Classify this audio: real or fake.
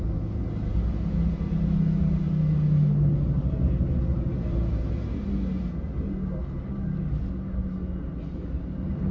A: real